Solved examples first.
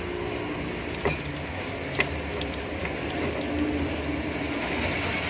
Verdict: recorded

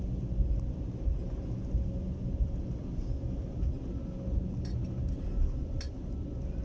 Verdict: recorded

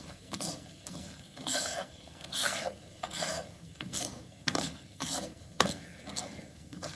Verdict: remade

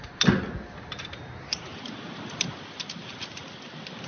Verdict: recorded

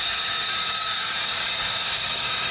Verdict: remade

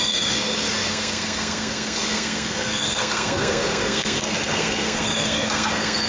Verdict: remade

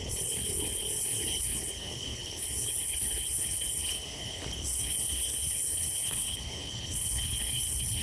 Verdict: remade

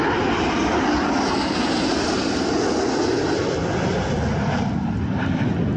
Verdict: recorded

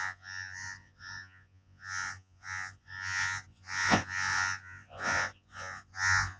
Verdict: remade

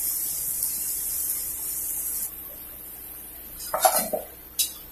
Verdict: recorded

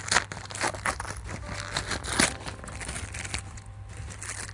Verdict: recorded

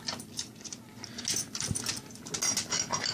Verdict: recorded